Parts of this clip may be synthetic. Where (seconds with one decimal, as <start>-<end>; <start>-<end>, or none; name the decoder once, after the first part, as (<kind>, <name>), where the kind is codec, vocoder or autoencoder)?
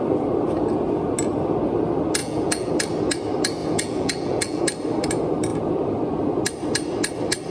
2.2-2.7 (vocoder, Vocos); 3.6-4.6